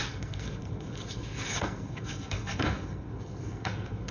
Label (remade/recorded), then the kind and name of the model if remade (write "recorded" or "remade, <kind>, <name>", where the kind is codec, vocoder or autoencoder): remade, codec, SNAC